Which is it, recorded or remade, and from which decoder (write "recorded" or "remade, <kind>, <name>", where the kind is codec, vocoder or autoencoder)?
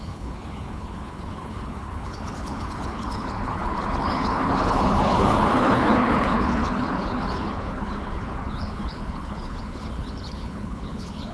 remade, codec, HILCodec